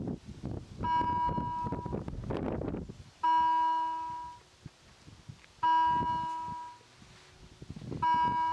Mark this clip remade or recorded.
recorded